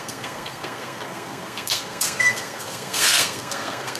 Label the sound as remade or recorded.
remade